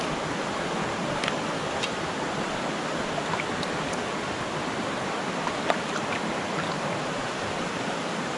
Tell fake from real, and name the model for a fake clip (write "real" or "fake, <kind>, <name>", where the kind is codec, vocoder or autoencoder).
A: real